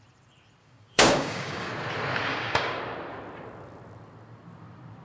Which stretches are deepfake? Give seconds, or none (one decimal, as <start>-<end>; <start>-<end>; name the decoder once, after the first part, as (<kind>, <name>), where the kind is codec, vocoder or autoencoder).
0.6-1.7 (codec, DAC); 2.3-2.8